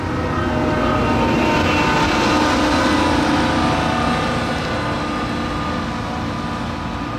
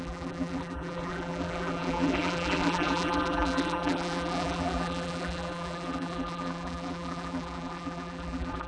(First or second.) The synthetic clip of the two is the second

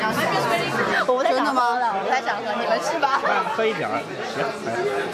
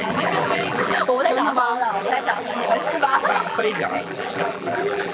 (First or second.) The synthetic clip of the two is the second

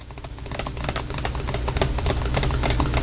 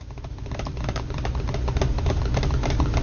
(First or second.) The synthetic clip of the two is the second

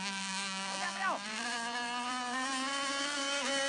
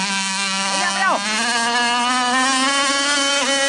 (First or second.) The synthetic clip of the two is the first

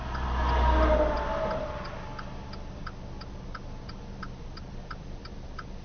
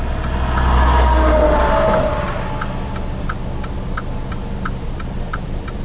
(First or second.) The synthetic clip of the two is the first